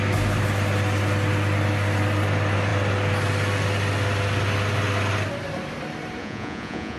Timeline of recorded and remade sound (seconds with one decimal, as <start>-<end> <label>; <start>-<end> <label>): 0.0-6.2 recorded; 6.2-7.0 remade